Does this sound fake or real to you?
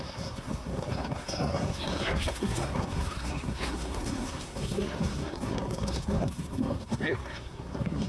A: fake